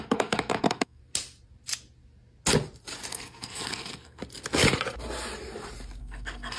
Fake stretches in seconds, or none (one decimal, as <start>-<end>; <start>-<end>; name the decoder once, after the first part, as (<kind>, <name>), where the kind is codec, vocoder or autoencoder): 0.0-1.0 (codec, SNAC); 3.1-4.2; 6.0-6.6